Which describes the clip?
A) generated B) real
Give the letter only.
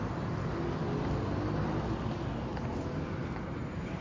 B